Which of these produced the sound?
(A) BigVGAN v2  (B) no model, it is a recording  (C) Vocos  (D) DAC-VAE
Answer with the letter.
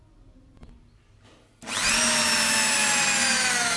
B